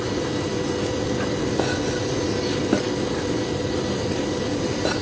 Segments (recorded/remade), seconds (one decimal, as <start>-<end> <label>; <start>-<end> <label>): 0.0-0.5 remade; 0.5-3.4 recorded; 3.4-5.0 remade